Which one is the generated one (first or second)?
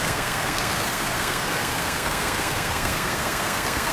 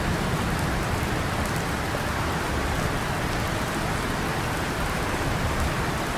first